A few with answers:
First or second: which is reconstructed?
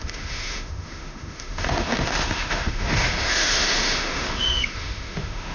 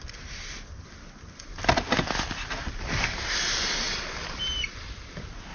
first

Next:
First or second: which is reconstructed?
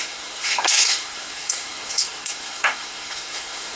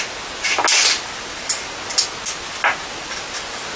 first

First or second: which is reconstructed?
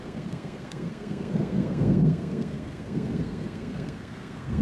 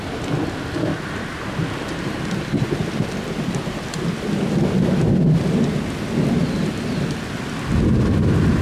first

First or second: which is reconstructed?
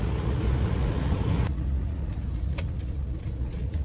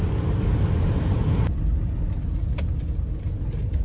first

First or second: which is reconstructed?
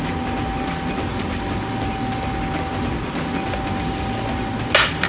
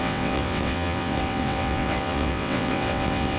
second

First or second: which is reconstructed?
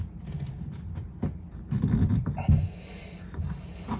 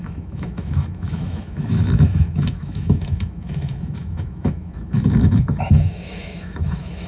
second